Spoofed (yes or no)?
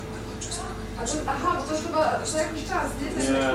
no